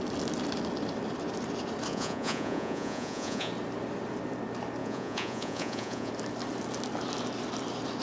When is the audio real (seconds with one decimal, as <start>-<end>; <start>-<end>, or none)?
0.0-1.9; 3.5-4.8; 6.1-8.0